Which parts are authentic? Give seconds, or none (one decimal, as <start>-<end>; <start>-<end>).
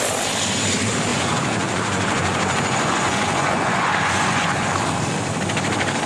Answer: 0.0-1.1; 4.7-6.1